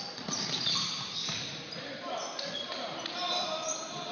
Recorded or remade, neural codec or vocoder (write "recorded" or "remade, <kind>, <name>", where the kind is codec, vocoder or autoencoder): recorded